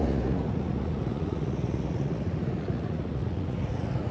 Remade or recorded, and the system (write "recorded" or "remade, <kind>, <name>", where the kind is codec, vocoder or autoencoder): remade, vocoder, Vocos